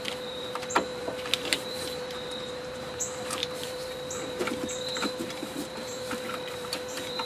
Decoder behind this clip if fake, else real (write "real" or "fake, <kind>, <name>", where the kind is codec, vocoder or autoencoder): fake, vocoder, BigVGAN v2